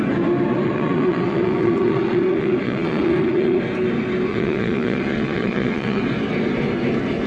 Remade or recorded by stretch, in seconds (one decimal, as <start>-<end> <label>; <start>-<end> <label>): 0.0-0.5 recorded; 0.5-3.6 remade; 3.6-4.3 recorded; 4.3-6.0 remade; 6.0-7.3 recorded